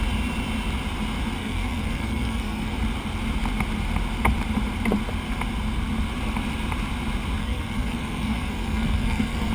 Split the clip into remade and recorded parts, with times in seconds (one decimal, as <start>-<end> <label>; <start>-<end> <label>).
0.0-1.4 recorded; 1.4-2.8 remade; 2.8-7.4 recorded; 7.4-9.5 remade